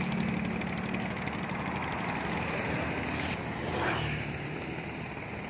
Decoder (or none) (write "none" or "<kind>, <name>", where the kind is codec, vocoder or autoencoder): none